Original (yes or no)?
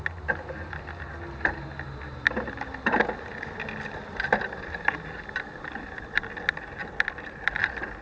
yes